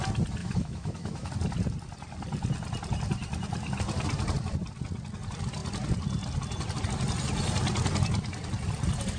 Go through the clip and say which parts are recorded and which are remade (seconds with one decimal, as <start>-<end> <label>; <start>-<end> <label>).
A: 0.0-0.4 recorded; 0.4-1.3 remade; 1.3-9.2 recorded